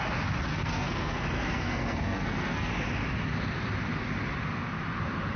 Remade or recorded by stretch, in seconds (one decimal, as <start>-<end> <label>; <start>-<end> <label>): 0.0-0.5 recorded; 0.5-2.7 remade; 2.7-5.4 recorded